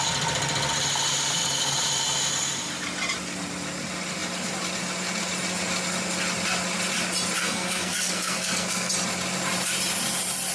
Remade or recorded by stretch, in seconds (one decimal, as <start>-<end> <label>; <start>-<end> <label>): 0.0-7.4 recorded; 7.4-8.9 remade; 8.9-10.5 recorded